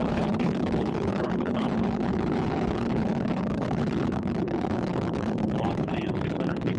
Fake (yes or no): yes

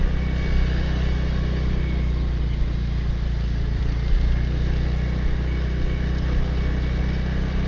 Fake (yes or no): no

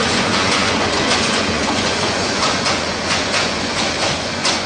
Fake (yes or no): yes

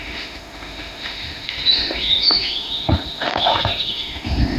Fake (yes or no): yes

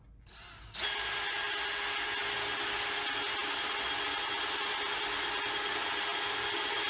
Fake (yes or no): no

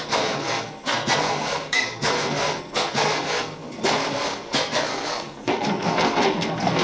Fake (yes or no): yes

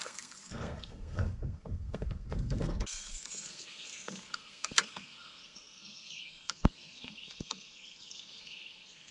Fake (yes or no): yes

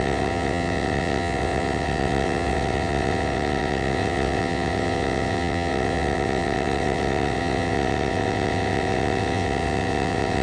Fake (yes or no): yes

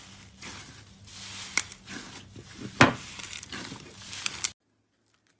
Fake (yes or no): no